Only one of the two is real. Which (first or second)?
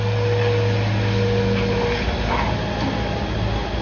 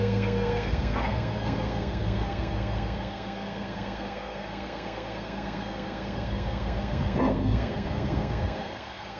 first